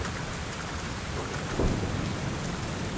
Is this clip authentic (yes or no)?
yes